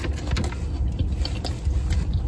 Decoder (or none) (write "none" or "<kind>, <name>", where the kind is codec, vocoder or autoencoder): none